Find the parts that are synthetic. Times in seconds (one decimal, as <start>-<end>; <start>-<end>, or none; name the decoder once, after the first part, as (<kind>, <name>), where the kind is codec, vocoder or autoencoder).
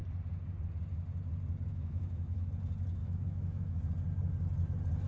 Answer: 1.7-2.5 (autoencoder, DAC-VAE); 3.0-3.8